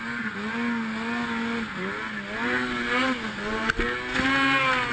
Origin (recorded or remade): recorded